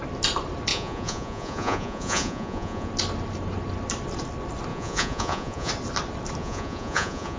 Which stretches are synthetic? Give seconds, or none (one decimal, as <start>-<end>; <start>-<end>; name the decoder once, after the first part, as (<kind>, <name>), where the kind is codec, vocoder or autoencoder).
0.7-2.9 (vocoder, Vocos); 4.7-5.7; 6.4-7.4